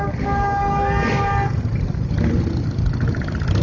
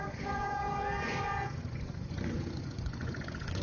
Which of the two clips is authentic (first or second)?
first